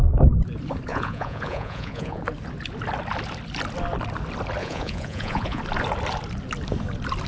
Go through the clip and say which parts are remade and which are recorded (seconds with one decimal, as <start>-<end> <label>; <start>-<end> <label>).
0.0-0.9 recorded; 0.9-2.2 remade; 2.2-4.6 recorded; 4.6-5.6 remade; 5.6-7.3 recorded